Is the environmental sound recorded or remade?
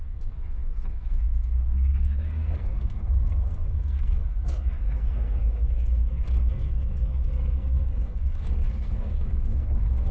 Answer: remade